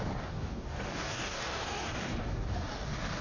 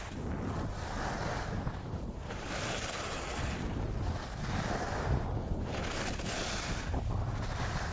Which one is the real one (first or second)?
second